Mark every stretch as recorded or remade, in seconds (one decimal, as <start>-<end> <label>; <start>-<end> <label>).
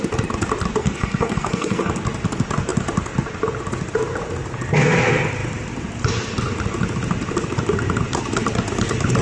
0.0-0.8 recorded; 0.8-1.9 remade; 1.9-9.2 recorded